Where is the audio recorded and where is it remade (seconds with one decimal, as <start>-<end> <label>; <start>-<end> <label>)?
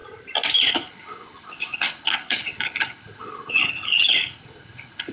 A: 0.0-0.7 recorded; 0.7-5.1 remade